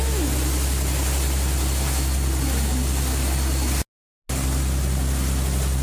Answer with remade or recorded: recorded